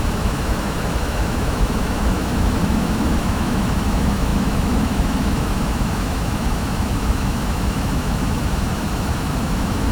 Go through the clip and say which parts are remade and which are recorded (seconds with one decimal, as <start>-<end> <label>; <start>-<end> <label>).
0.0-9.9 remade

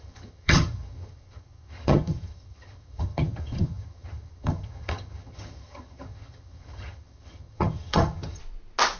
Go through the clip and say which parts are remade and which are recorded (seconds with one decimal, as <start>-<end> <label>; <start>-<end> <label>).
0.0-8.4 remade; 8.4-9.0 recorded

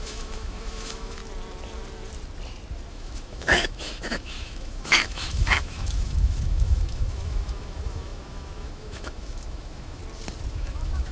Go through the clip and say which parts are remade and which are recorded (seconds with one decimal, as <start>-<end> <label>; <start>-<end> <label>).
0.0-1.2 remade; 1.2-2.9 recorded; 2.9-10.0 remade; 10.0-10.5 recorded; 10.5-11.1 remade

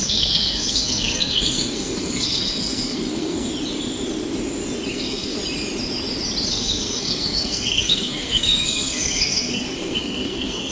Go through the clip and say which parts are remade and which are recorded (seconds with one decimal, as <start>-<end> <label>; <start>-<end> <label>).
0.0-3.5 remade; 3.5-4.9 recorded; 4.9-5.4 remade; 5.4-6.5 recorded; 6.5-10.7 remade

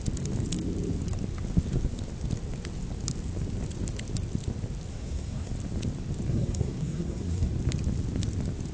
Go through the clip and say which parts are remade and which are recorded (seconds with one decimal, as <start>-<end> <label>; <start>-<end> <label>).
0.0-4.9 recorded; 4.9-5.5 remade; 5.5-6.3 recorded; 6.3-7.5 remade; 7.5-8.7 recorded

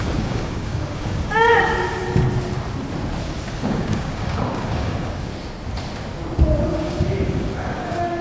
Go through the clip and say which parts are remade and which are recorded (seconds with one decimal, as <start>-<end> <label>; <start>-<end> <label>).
0.0-2.0 remade; 2.0-3.6 recorded; 3.6-5.3 remade; 5.3-6.7 recorded; 6.7-8.2 remade

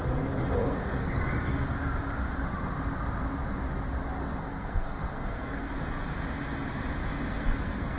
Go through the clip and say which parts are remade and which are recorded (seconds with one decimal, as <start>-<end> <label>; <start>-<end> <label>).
0.0-0.6 recorded; 0.6-1.2 remade; 1.2-4.2 recorded; 4.2-5.7 remade; 5.7-7.0 recorded; 7.0-8.0 remade